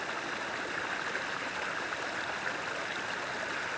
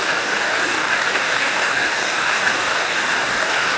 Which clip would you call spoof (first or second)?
second